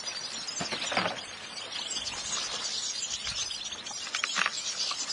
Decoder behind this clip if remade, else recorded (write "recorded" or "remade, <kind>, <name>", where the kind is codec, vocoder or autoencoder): recorded